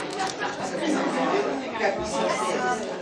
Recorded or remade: remade